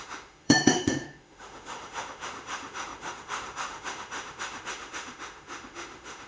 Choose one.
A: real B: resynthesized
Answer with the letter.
B